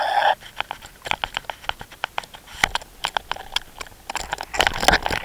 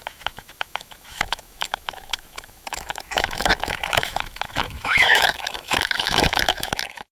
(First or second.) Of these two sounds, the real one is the first